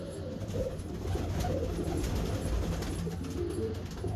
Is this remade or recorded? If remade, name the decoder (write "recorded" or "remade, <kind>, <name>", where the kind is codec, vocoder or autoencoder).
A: recorded